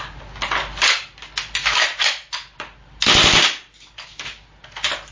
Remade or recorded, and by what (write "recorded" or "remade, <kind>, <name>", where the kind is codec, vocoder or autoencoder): recorded